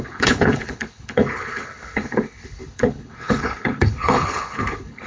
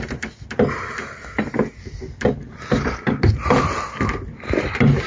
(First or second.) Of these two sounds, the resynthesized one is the first